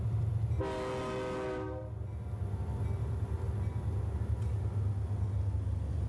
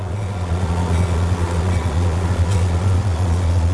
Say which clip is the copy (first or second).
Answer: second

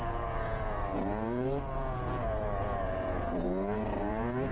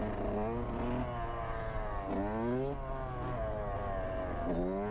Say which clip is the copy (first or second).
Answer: first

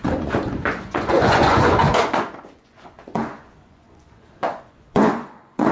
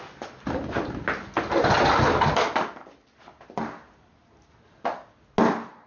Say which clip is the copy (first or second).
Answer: first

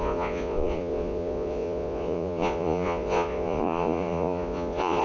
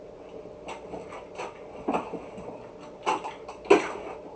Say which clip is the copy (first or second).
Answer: first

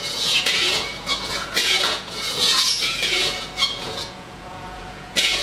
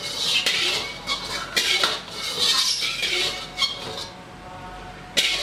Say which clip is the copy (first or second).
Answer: first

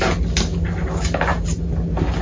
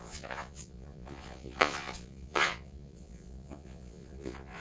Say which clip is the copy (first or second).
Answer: second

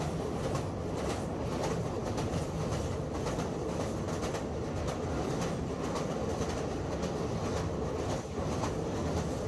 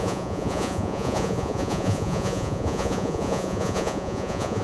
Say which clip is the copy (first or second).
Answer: second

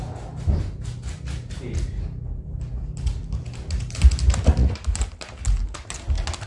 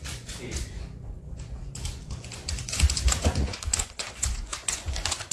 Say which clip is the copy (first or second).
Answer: second